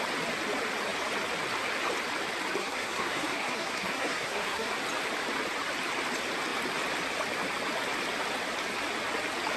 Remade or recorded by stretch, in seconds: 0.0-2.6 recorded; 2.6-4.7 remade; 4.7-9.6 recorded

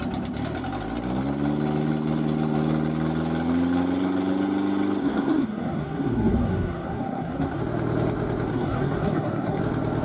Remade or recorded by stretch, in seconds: 0.0-5.0 recorded; 5.0-7.6 remade; 7.6-8.5 recorded; 8.5-9.6 remade; 9.6-10.0 recorded

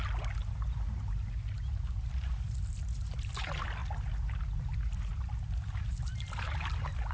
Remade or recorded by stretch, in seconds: 0.0-7.1 recorded